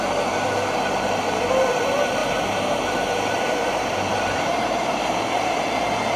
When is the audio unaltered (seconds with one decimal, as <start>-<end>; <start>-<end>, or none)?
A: 0.0-2.2; 5.2-6.2